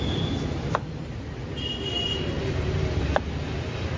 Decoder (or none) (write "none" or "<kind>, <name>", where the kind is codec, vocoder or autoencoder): none